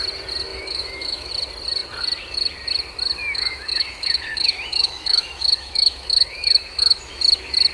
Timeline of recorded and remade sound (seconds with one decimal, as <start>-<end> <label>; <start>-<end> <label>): 0.0-0.5 recorded; 0.5-1.3 remade; 1.3-3.2 recorded; 3.2-7.2 remade; 7.2-7.7 recorded